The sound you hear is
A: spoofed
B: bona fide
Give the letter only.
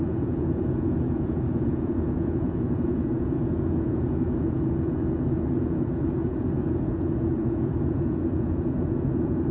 A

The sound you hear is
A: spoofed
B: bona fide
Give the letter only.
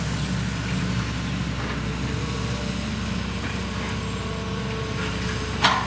B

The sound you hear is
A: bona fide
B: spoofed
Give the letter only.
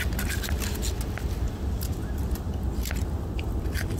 A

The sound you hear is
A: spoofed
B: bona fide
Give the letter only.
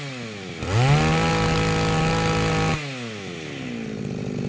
B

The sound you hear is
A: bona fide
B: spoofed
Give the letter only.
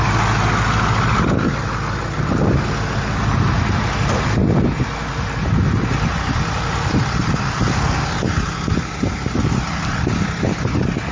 A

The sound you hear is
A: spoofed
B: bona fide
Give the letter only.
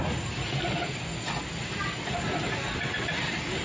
B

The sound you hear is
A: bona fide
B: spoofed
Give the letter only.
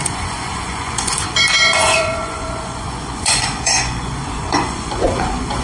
B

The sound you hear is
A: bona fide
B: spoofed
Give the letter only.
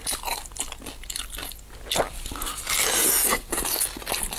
A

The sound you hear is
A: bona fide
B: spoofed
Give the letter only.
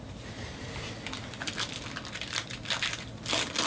A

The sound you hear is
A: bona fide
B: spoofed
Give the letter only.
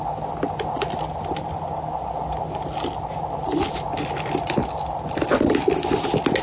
A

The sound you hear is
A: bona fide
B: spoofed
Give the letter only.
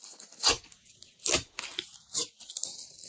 A